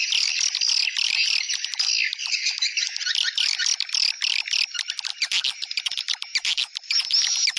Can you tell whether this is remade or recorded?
recorded